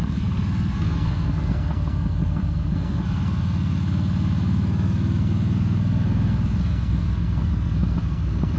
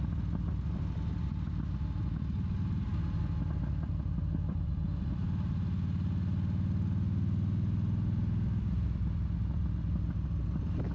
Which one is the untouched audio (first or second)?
second